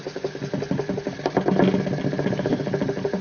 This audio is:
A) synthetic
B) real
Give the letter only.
B